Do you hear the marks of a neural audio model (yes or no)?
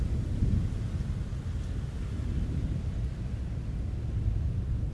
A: no